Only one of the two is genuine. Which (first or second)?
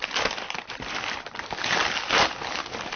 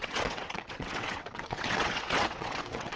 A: first